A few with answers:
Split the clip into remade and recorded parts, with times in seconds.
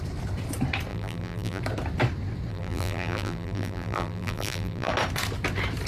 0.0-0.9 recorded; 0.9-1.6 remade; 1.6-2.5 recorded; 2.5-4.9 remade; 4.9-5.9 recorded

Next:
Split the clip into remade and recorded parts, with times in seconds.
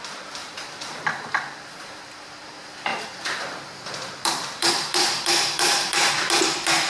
0.0-0.4 recorded; 0.4-2.1 remade; 2.1-2.9 recorded; 2.9-6.1 remade; 6.1-6.9 recorded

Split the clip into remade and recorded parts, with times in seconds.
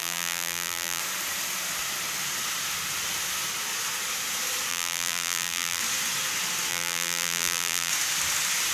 0.0-1.0 remade; 1.0-4.7 recorded; 4.7-5.8 remade; 5.8-6.7 recorded; 6.7-7.9 remade; 7.9-8.7 recorded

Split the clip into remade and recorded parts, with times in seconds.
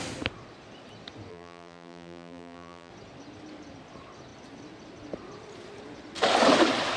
0.0-1.3 recorded; 1.3-2.9 remade; 2.9-7.0 recorded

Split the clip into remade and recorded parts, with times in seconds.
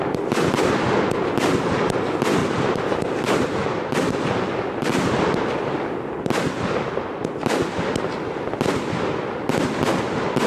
0.0-2.4 recorded; 2.4-5.1 remade; 5.1-10.5 recorded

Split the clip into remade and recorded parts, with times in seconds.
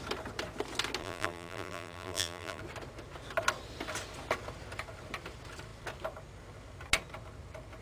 0.0-1.0 recorded; 1.0-2.6 remade; 2.6-7.8 recorded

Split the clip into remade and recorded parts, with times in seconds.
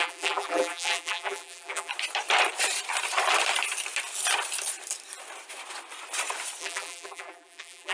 0.0-1.9 remade; 1.9-6.6 recorded; 6.6-7.9 remade